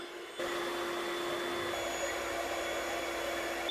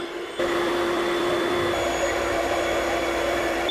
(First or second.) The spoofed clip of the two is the second